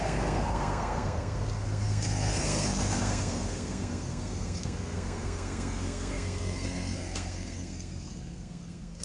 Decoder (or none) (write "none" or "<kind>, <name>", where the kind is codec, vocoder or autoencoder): codec, SNAC